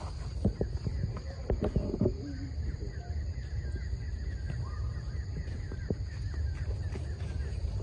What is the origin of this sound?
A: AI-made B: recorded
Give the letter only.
B